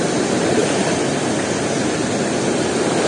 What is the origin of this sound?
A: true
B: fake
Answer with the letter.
A